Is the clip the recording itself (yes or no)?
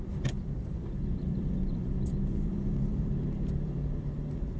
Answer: no